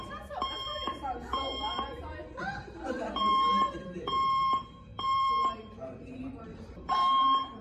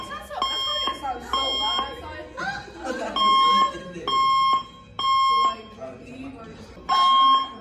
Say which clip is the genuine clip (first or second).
second